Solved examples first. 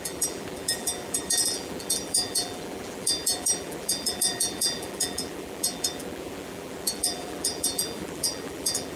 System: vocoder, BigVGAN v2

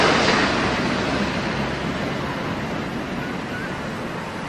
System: none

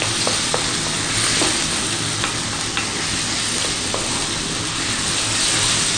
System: none